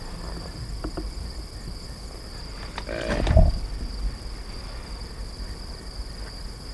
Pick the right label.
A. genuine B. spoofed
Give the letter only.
A